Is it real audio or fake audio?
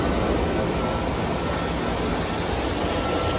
real